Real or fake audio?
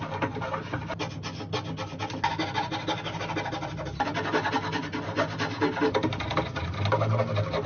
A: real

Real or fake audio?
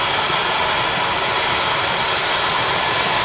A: real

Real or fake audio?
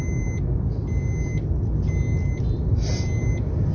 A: real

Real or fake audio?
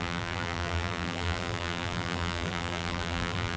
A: fake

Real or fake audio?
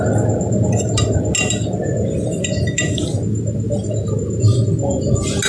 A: real